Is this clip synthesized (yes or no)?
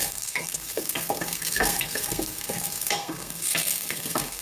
yes